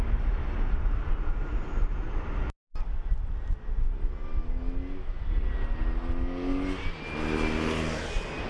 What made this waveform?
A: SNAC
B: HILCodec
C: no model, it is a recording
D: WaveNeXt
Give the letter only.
C